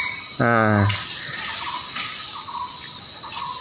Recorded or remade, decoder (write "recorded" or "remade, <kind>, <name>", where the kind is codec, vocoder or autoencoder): recorded